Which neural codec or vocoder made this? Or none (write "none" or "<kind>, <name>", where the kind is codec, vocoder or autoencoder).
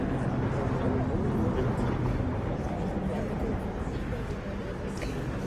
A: none